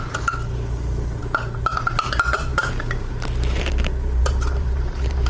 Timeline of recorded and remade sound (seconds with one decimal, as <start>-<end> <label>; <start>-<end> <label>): 0.0-2.5 recorded; 2.5-3.7 remade; 3.7-4.2 recorded; 4.2-5.3 remade